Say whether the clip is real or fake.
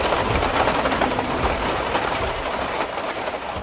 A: fake